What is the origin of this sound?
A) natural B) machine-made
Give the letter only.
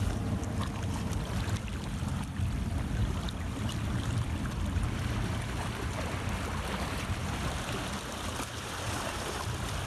B